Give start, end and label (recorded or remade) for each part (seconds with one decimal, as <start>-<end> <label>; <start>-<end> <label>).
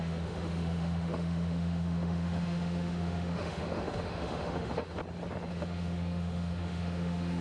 0.0-5.0 remade; 5.0-5.5 recorded; 5.5-7.4 remade